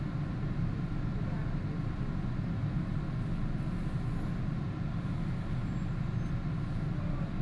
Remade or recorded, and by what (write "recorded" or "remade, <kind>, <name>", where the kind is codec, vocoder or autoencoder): recorded